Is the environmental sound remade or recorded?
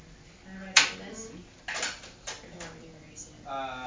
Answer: recorded